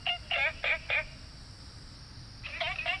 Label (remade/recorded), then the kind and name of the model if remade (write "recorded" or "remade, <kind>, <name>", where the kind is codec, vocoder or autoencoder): recorded